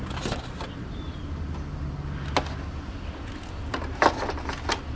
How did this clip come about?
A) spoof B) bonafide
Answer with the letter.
B